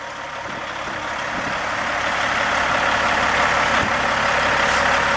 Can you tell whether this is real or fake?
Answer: real